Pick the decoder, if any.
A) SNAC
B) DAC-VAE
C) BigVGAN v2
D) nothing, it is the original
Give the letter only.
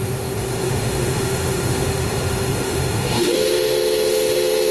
B